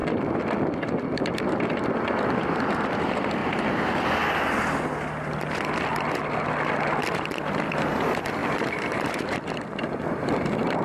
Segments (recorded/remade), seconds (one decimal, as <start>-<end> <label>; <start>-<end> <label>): 0.0-3.4 remade; 3.4-7.0 recorded; 7.0-10.8 remade